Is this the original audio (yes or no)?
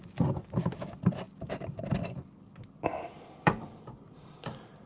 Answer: no